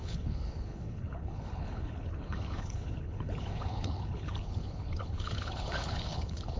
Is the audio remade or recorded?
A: remade